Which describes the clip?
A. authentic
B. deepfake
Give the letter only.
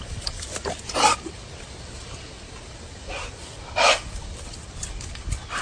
B